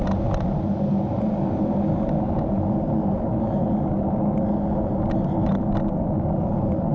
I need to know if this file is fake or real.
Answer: real